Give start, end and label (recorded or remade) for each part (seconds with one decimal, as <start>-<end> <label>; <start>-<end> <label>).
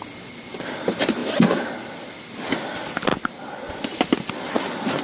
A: 0.0-1.2 recorded; 1.2-1.7 remade; 1.7-3.1 recorded; 3.1-3.7 remade; 3.7-5.0 recorded